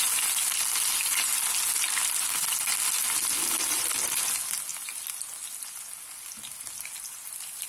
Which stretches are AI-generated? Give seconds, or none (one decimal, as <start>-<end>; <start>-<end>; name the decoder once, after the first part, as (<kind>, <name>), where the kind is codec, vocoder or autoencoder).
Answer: none